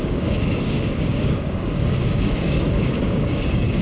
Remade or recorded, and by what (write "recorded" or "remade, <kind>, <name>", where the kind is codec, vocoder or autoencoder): remade, codec, DAC